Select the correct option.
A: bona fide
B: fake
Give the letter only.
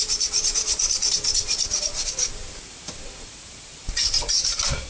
B